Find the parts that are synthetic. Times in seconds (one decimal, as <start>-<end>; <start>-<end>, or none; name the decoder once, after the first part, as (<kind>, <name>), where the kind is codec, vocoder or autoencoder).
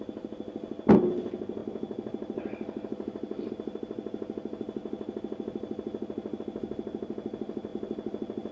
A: none